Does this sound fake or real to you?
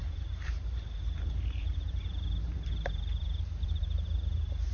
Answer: fake